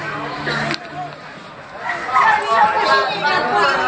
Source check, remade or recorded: recorded